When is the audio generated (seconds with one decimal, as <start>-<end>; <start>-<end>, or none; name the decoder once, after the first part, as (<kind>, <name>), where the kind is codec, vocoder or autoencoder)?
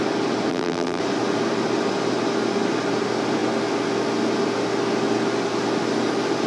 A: 0.5-1.0 (vocoder, BigVGAN v2)